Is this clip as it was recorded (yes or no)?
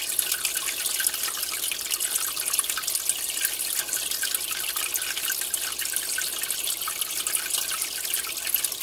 yes